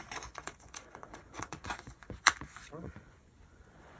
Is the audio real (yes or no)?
no